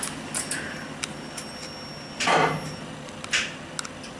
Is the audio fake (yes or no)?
no